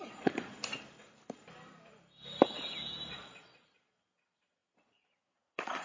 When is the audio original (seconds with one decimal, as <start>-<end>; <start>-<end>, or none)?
0.5-3.1